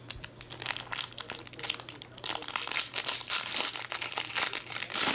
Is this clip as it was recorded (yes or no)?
yes